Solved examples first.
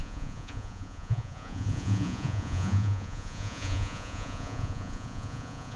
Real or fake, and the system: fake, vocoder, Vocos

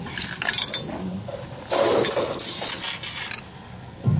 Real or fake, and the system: real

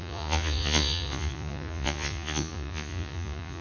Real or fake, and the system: fake, vocoder, Vocos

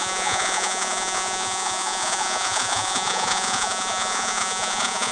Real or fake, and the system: fake, vocoder, Vocos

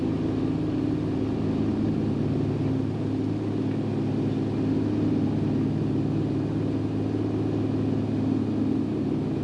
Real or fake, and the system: real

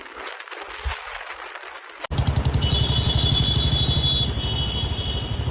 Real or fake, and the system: real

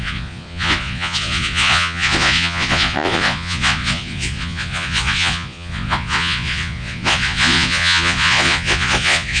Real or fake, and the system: fake, vocoder, Vocos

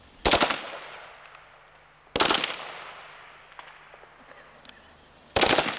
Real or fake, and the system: real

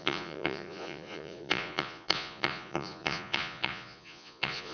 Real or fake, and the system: fake, vocoder, Vocos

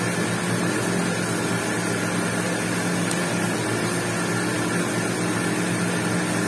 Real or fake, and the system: real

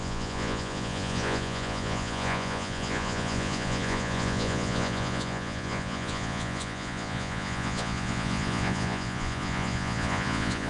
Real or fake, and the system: fake, vocoder, Vocos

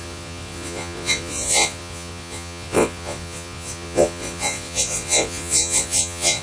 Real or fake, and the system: fake, vocoder, Vocos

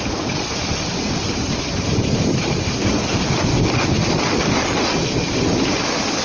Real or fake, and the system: real